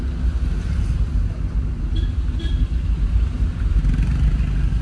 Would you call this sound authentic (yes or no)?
yes